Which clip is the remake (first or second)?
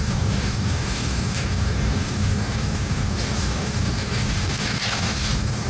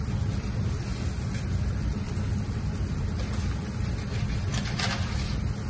first